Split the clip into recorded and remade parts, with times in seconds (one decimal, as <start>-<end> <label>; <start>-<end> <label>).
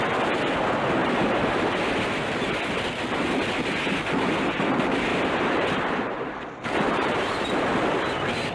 0.0-1.0 recorded; 1.0-1.6 remade; 1.6-5.1 recorded; 5.1-7.5 remade; 7.5-8.5 recorded